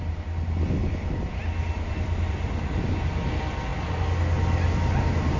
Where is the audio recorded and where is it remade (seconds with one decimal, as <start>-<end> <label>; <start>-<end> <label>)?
0.0-0.8 recorded; 0.8-3.0 remade; 3.0-5.4 recorded